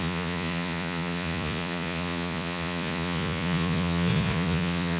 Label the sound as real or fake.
fake